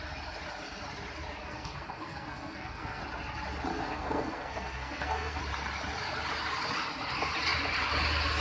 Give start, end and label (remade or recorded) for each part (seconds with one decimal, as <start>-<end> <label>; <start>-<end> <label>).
0.0-1.4 recorded; 1.4-3.0 remade; 3.0-3.7 recorded; 3.7-5.4 remade; 5.4-8.4 recorded